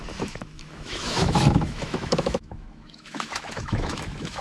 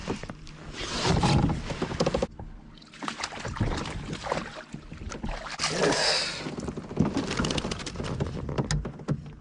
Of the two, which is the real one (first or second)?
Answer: second